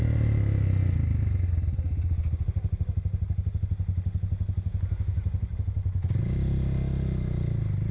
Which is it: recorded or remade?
recorded